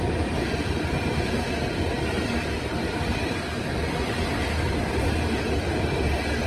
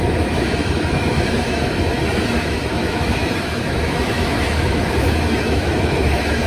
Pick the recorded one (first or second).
first